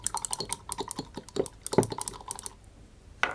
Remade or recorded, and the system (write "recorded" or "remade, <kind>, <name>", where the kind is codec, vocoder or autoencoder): recorded